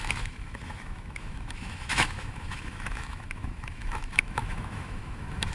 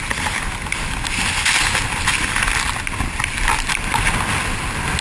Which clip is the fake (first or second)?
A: first